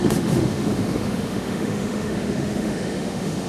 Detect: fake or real fake